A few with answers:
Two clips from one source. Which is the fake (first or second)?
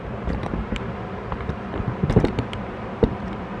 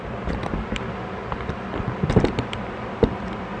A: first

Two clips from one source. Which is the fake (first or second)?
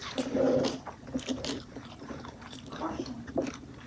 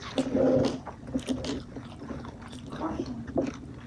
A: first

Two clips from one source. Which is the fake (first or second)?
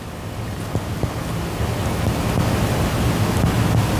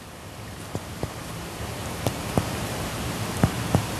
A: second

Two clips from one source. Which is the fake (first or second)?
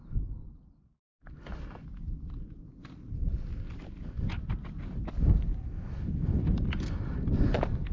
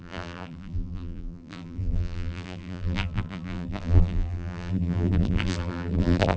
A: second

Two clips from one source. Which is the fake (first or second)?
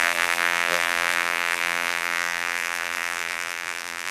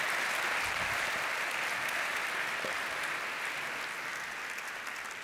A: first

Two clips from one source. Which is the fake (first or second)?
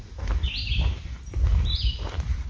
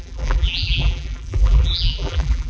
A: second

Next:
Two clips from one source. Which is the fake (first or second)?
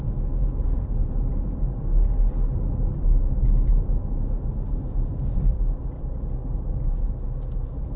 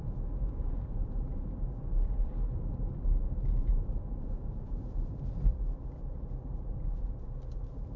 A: second